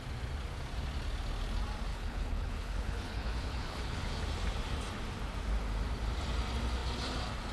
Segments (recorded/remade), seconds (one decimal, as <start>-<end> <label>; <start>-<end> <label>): 0.0-1.9 recorded; 1.9-4.1 remade; 4.1-7.5 recorded